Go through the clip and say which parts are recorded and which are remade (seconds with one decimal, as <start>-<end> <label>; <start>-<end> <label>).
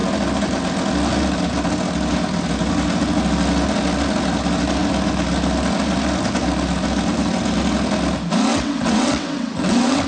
0.0-8.5 recorded; 8.5-10.1 remade